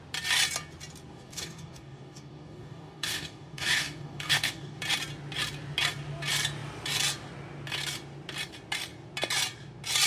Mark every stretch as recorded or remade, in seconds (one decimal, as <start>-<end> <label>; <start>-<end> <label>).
0.0-1.1 recorded; 1.1-4.8 remade; 4.8-10.1 recorded